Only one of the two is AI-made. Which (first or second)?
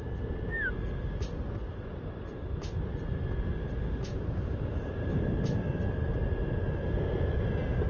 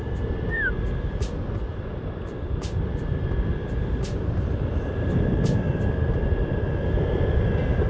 second